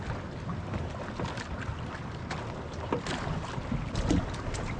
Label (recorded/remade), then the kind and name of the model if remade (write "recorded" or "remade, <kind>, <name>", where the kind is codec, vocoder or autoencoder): recorded